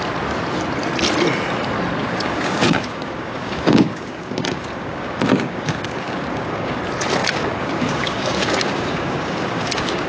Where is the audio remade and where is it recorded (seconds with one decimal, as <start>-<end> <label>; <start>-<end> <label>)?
0.0-2.0 recorded; 2.0-6.8 remade; 6.8-7.2 recorded; 7.2-10.1 remade